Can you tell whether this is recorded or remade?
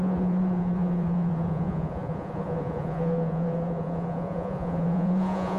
remade